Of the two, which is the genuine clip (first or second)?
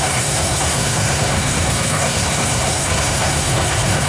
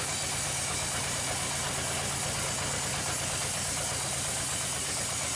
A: second